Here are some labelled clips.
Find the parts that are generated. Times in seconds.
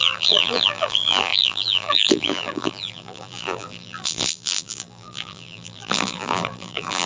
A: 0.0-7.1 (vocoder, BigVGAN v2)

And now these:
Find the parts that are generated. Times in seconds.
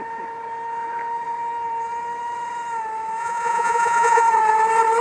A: 3.2-4.2 (vocoder, Vocos)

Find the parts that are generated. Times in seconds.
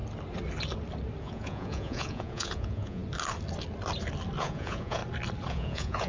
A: 1.2-3.0 (vocoder, Vocos); 4.4-5.0; 5.5-6.1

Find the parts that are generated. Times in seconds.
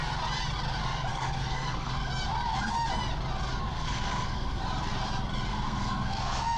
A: 1.1-2.1 (codec, SNAC); 3.7-4.6; 5.5-6.6